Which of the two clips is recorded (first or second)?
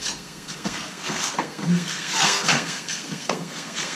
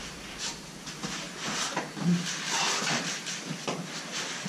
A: second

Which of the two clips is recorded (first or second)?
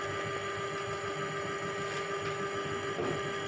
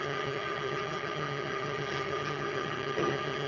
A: first